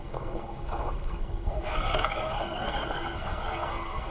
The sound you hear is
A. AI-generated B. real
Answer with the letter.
A